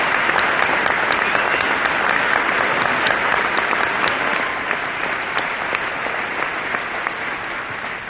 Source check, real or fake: real